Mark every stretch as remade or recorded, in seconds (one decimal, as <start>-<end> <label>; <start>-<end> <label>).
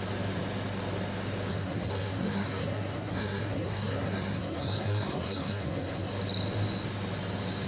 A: 0.0-1.5 recorded; 1.5-6.1 remade; 6.1-7.7 recorded